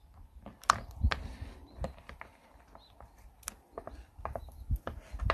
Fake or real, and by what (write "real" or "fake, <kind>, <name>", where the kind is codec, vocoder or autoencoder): real